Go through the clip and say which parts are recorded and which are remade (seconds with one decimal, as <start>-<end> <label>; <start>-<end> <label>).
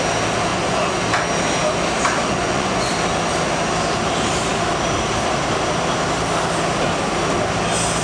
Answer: 0.0-0.5 recorded; 0.5-1.0 remade; 1.0-2.2 recorded; 2.2-2.9 remade; 2.9-8.0 recorded